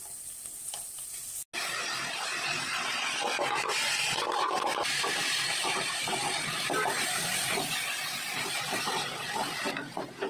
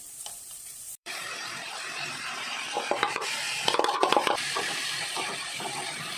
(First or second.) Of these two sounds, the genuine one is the first